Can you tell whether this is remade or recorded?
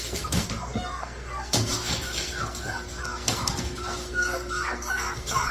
remade